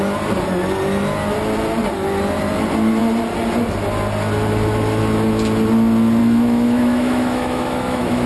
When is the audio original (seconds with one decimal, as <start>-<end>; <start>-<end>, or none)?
0.0-6.2